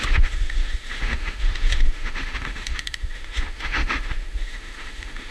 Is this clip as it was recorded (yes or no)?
no